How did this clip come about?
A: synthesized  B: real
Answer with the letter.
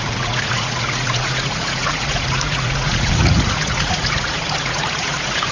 A